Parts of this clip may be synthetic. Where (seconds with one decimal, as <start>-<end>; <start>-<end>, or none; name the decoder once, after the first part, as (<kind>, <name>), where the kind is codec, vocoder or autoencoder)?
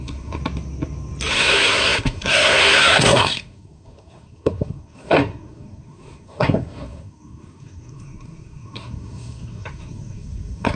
0.0-0.4 (codec, SNAC); 1.3-10.8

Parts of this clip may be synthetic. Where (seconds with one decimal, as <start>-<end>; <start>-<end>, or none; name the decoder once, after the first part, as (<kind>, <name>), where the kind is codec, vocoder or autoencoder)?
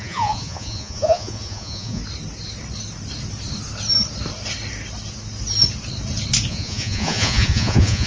0.0-2.0 (vocoder, Vocos); 6.5-8.1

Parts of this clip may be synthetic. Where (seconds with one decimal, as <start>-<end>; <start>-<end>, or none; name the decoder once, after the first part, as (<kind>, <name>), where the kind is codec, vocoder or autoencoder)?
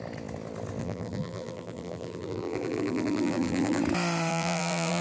0.8-3.8 (vocoder, BigVGAN v2); 4.3-5.0